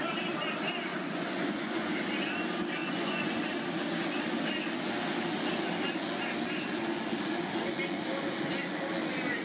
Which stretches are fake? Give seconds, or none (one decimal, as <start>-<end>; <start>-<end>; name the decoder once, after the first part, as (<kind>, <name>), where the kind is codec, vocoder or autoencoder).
0.9-1.9 (vocoder, Vocos); 2.8-3.4